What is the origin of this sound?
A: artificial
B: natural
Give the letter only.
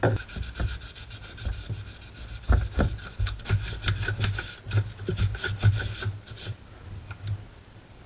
B